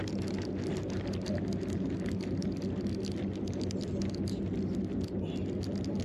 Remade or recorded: recorded